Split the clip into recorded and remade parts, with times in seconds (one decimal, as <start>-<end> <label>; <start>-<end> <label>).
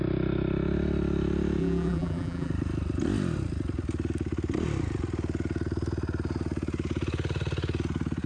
0.0-1.6 recorded; 1.6-2.5 remade; 2.5-8.3 recorded